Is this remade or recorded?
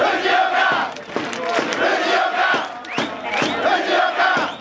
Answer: recorded